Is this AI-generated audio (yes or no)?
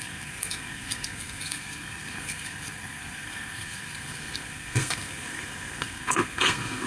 yes